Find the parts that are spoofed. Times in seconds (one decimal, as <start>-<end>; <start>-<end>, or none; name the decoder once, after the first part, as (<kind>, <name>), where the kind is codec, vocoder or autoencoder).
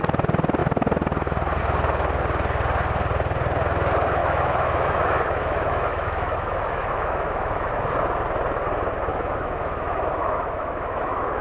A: 4.2-7.7 (autoencoder, DAC-VAE); 9.1-11.4